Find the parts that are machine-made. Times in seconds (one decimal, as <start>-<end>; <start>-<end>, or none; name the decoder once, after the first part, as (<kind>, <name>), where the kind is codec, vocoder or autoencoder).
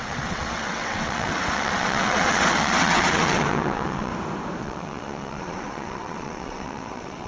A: 0.0-4.1 (vocoder, WaveNeXt); 4.6-7.3